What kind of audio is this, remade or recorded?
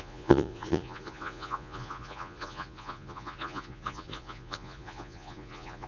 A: remade